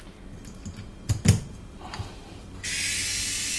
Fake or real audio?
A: real